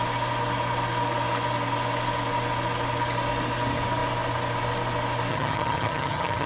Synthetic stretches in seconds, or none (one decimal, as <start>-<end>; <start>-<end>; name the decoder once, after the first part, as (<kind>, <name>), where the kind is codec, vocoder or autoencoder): 5.3-6.5 (vocoder, HiFi-GAN)